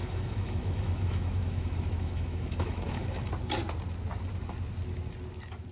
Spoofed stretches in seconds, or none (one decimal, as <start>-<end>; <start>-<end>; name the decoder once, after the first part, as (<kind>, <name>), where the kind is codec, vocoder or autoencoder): 0.0-3.3 (autoencoder, DAC-VAE)